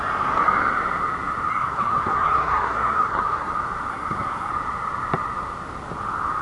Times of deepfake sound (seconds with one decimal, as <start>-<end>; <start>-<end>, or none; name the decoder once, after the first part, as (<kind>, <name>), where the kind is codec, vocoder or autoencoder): 1.5-3.5 (codec, SNAC); 3.9-4.5